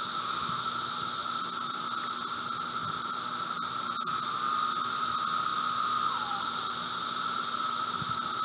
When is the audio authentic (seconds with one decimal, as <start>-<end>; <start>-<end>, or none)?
0.0-8.4